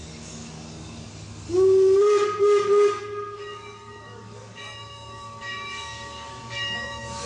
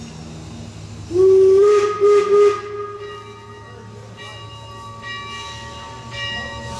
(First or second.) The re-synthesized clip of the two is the first